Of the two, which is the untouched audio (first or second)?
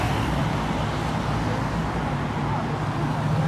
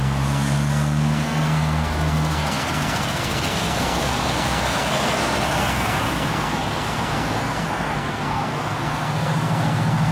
first